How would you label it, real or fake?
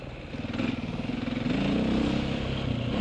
real